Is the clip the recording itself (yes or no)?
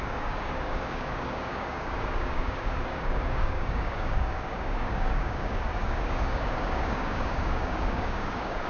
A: no